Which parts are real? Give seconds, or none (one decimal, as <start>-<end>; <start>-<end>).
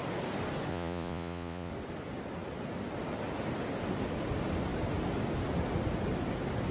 0.0-0.7; 1.7-6.7